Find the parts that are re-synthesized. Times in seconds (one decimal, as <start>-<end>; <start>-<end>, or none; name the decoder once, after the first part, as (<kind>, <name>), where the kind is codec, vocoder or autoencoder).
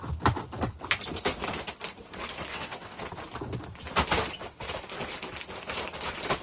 2.5-3.0 (vocoder, WaveNeXt)